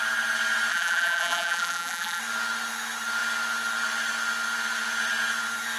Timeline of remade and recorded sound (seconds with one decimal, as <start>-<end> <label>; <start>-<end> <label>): 0.0-0.7 recorded; 0.7-2.2 remade; 2.2-5.8 recorded